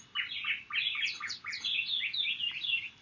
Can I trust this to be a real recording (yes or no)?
yes